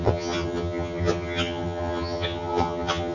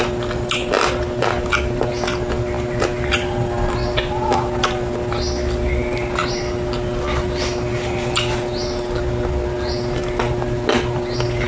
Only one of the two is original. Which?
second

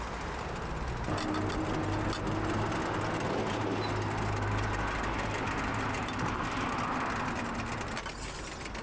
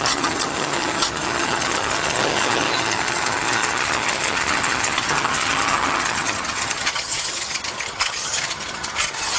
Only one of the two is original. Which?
first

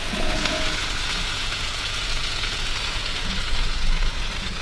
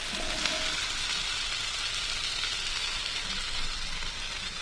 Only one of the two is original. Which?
second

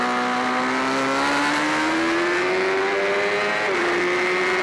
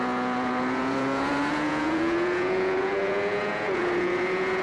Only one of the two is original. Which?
first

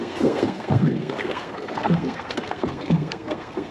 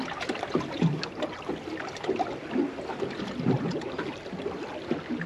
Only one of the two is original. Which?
second